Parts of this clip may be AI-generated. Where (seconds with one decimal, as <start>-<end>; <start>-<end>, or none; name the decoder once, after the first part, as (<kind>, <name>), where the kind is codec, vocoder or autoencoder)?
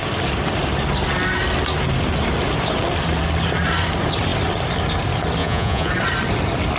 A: 5.4-5.9 (vocoder, Vocos)